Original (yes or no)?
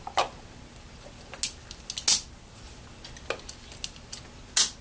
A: yes